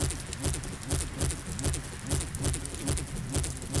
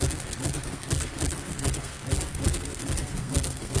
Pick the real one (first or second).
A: first